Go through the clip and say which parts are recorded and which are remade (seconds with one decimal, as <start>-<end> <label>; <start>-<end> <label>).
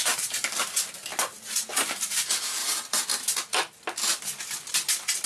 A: 0.0-1.1 remade; 1.1-1.7 recorded; 1.7-2.6 remade; 2.6-5.3 recorded